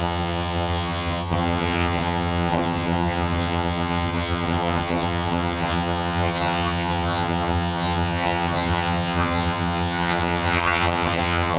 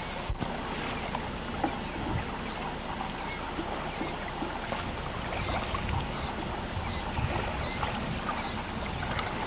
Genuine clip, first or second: second